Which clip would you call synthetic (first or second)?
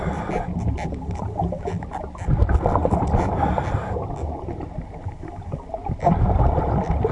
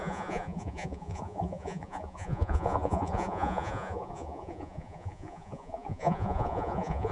second